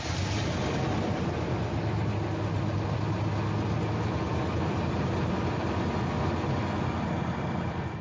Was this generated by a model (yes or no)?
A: no